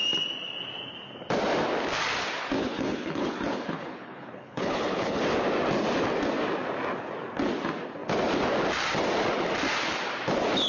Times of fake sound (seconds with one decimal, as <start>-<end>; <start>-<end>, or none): 2.6-5.2